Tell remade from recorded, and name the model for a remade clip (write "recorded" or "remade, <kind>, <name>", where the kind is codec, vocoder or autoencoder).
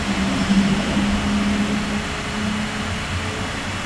recorded